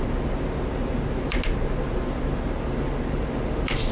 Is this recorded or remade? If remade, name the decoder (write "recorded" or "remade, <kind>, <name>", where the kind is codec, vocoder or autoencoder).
recorded